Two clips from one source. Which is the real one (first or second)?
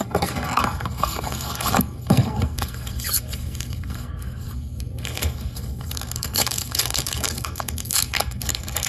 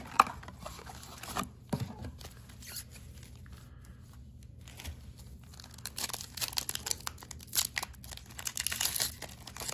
second